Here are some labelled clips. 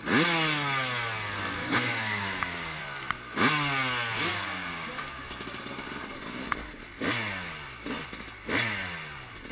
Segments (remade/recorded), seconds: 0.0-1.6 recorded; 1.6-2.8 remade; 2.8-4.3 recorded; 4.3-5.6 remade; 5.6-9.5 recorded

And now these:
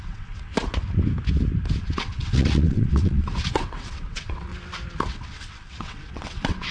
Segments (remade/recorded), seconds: 0.0-0.5 remade; 0.5-1.8 recorded; 1.8-4.5 remade; 4.5-5.1 recorded; 5.1-6.7 remade

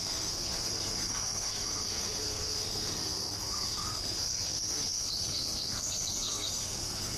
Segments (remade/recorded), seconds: 0.0-7.2 remade

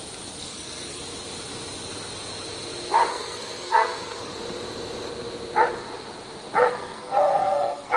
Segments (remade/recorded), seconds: 0.0-0.4 recorded; 0.4-1.0 remade; 1.0-3.1 recorded; 3.1-4.3 remade; 4.3-6.6 recorded; 6.6-8.0 remade

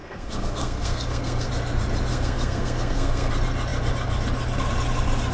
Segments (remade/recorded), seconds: 0.0-1.5 remade; 1.5-2.1 recorded; 2.1-3.3 remade; 3.3-5.3 recorded

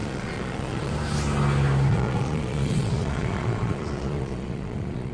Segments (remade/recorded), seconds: 0.0-0.9 remade; 0.9-1.9 recorded; 1.9-5.1 remade

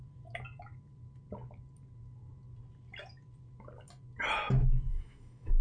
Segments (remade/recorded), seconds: 0.0-4.9 recorded; 4.9-5.6 remade

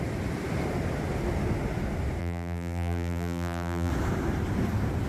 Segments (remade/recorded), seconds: 0.0-2.2 recorded; 2.2-3.9 remade; 3.9-5.1 recorded